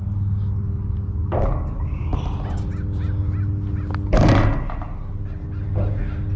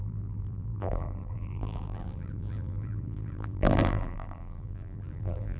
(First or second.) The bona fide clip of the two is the first